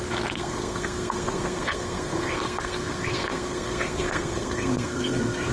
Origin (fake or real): fake